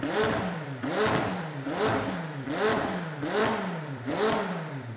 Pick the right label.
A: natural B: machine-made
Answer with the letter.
B